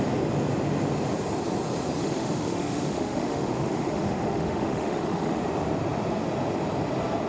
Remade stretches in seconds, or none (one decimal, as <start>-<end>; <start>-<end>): 2.0-5.4